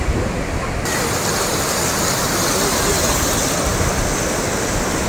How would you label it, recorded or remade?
recorded